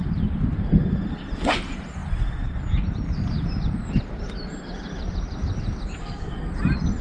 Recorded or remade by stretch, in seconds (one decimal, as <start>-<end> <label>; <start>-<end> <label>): 0.0-6.0 recorded; 6.0-6.5 remade; 6.5-7.0 recorded